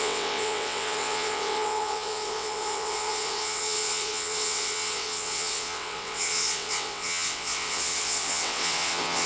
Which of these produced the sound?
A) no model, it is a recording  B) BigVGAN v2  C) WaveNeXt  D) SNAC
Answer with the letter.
C